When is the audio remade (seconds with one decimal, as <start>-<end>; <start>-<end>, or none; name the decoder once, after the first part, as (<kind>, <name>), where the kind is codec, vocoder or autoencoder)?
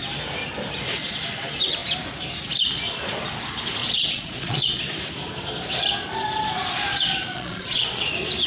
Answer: 3.8-4.8 (vocoder, Vocos); 6.9-8.1